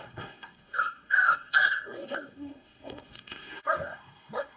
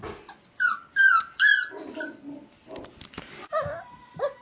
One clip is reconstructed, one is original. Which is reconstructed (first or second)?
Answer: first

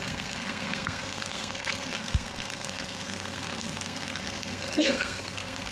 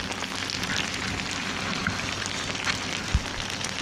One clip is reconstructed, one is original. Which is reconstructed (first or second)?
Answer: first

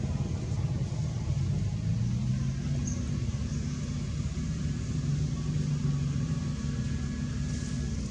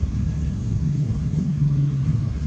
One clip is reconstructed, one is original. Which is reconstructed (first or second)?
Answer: second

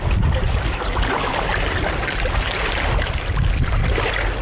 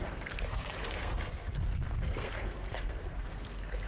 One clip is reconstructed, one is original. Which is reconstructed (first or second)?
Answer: second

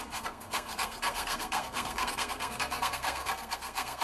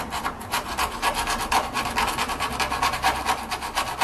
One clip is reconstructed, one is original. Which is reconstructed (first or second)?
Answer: first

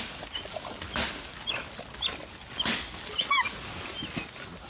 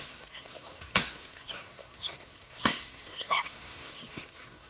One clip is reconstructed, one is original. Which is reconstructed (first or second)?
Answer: second